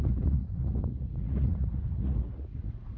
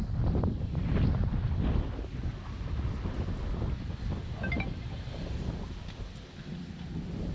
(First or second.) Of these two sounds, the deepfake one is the first